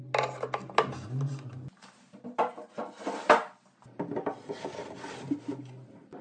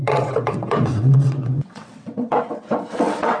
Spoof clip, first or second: second